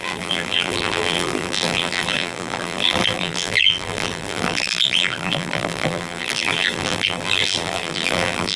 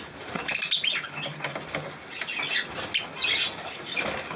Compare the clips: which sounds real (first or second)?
second